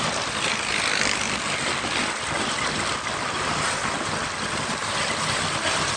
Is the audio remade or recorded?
recorded